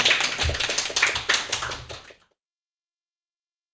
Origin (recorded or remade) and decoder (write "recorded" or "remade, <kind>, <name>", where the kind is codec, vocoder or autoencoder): recorded